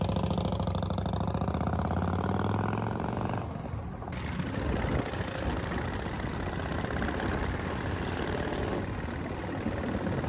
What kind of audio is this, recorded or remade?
recorded